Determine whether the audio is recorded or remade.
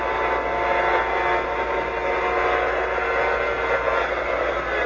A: recorded